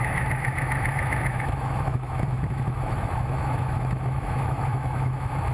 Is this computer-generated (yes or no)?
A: yes